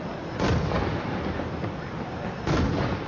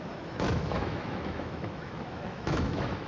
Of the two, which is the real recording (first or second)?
first